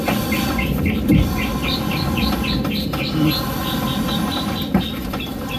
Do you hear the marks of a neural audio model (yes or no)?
no